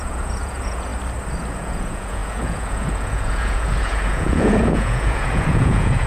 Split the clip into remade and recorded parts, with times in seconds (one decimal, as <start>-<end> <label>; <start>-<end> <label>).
0.0-0.9 remade; 0.9-1.5 recorded; 1.5-6.1 remade